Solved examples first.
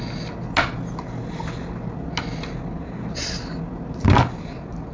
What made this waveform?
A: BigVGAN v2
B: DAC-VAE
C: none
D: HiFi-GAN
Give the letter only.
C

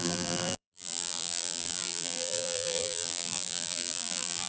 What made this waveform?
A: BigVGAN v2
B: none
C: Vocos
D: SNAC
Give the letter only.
A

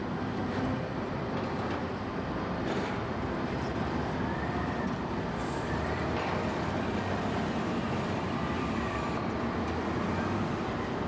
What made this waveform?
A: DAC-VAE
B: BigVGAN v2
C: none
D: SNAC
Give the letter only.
B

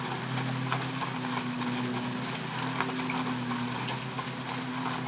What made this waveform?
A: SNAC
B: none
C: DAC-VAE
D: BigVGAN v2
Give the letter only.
D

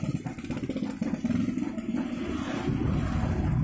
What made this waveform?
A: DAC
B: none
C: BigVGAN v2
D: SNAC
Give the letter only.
B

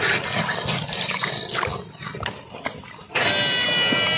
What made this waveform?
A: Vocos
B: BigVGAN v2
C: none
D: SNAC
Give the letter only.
C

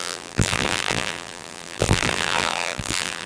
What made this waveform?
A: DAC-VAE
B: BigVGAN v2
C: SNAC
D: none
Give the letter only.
B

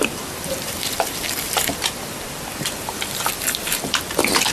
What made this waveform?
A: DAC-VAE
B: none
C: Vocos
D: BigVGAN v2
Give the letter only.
D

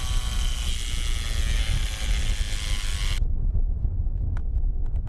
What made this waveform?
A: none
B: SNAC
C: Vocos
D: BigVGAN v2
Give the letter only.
A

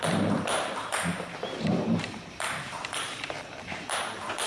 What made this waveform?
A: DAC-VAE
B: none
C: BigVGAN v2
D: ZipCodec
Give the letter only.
C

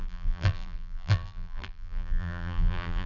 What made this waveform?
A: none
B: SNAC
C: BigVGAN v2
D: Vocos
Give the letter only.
C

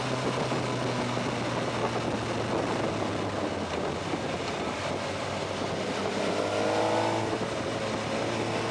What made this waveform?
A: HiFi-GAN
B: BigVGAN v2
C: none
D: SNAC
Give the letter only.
C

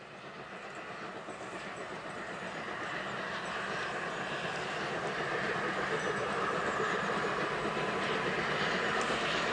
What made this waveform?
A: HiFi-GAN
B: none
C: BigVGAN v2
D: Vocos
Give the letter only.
B